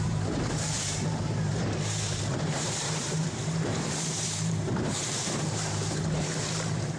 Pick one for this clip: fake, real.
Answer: fake